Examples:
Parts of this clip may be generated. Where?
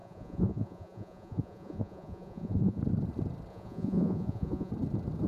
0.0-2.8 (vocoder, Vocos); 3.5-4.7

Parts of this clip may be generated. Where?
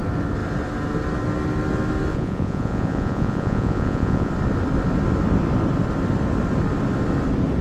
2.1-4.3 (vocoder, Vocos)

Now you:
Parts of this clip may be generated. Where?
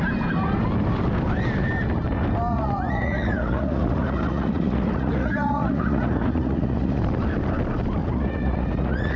2.5-7.0 (vocoder, Vocos); 8.0-9.2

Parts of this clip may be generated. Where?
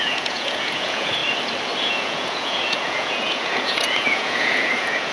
0.0-1.2 (vocoder, Vocos); 1.8-5.1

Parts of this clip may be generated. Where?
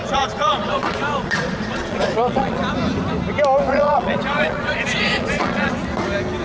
0.0-2.6 (vocoder, Vocos); 3.7-5.7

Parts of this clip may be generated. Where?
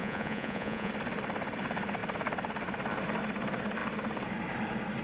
0.0-0.9 (vocoder, Vocos)